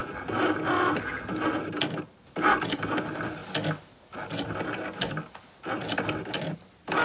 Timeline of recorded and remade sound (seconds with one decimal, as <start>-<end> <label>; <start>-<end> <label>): 0.0-7.0 recorded